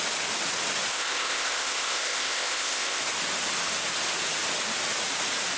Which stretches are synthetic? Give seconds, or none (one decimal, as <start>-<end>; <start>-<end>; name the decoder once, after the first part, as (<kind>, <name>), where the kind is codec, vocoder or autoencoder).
0.9-3.0 (codec, ZipCodec)